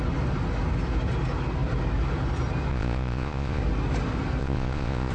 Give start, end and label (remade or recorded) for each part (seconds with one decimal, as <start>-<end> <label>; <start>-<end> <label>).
0.0-2.7 recorded; 2.7-3.6 remade; 3.6-4.4 recorded; 4.4-5.1 remade